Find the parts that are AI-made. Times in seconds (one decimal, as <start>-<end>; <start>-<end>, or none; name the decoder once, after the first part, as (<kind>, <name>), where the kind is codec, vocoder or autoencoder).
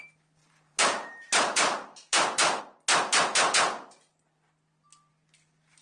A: 0.4-2.6 (vocoder, BigVGAN v2)